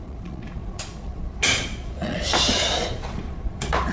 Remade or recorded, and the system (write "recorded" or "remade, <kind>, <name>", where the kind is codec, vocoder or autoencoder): remade, vocoder, Vocos